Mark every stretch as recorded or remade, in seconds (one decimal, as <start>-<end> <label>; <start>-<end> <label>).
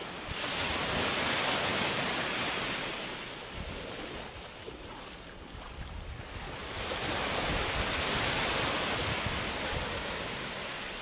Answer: 0.0-11.0 recorded